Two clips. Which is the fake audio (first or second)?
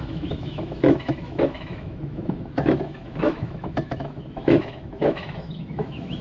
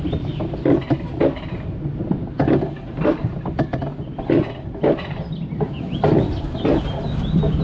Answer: first